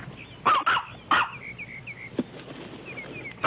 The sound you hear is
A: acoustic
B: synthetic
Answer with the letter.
A